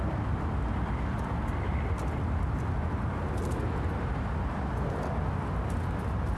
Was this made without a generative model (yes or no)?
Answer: yes